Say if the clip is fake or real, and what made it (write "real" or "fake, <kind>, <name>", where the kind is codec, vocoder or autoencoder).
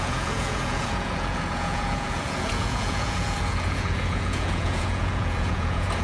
fake, vocoder, Vocos